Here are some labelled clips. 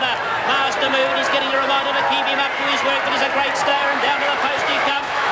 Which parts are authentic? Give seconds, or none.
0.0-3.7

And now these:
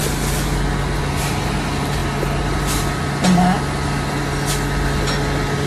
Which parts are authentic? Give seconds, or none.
0.0-5.7

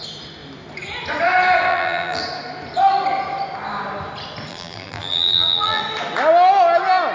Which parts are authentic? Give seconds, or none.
0.0-1.7; 2.2-4.5; 5.8-7.1

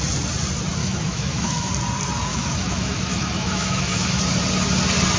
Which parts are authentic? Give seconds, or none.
0.0-0.8; 1.7-2.3; 4.2-5.2